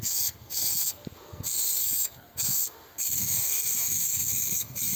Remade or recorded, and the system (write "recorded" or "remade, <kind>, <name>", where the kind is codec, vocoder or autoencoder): remade, codec, SNAC